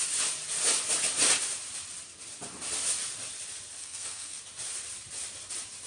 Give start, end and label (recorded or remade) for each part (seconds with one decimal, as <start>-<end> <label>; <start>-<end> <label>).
0.0-3.8 recorded; 3.8-4.4 remade; 4.4-5.9 recorded